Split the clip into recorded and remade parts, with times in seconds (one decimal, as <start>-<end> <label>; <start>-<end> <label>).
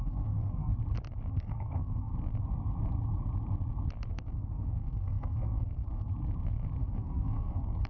0.0-0.7 remade; 0.7-1.3 recorded; 1.3-2.1 remade; 2.1-4.1 recorded; 4.1-6.1 remade; 6.1-6.8 recorded; 6.8-7.9 remade